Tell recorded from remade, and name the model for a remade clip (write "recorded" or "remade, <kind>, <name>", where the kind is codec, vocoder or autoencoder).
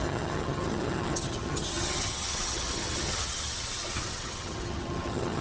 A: remade, vocoder, HiFi-GAN